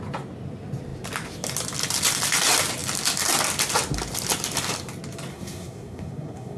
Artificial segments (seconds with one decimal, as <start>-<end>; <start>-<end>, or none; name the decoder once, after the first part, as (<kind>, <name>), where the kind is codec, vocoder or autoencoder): 5.3-6.6 (codec, SNAC)